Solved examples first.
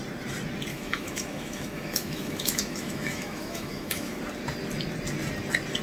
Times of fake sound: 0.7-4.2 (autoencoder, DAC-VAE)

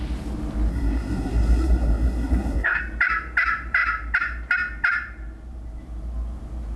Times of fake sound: 0.7-2.8 (codec, SNAC)

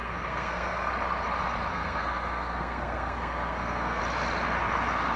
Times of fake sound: 0.0-0.9 (codec, SNAC); 1.7-4.0